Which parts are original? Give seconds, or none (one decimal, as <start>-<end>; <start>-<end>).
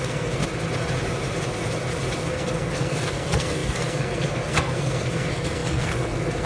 0.4-2.2